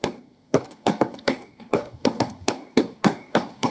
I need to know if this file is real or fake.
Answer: fake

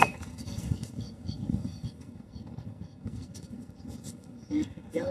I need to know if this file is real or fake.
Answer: fake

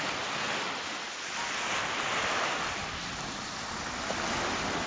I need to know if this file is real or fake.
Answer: real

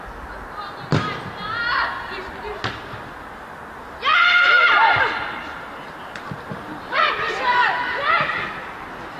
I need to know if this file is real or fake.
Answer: real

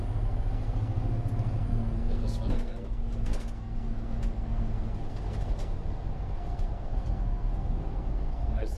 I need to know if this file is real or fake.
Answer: fake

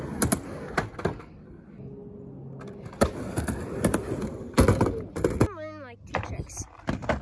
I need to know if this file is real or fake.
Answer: real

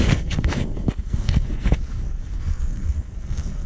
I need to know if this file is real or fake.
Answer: fake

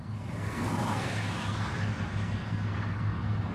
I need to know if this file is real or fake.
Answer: fake